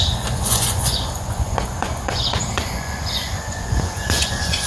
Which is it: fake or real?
fake